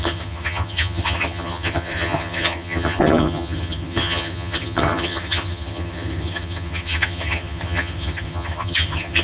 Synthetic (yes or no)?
yes